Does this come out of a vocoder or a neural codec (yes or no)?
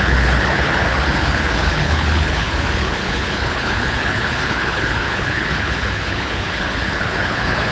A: yes